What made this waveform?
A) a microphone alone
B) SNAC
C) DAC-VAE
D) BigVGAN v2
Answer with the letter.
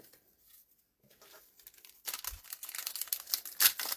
A